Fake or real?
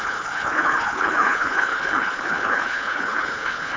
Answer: fake